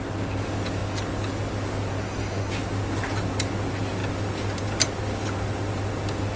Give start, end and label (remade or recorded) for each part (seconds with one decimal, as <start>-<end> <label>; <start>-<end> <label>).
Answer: 0.0-2.0 recorded; 2.0-2.5 remade; 2.5-6.4 recorded